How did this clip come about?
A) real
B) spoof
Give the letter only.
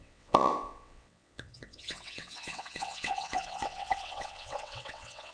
B